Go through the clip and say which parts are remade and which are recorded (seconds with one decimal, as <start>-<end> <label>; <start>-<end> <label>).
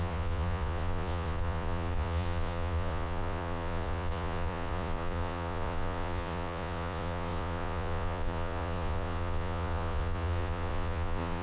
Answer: 0.0-11.4 remade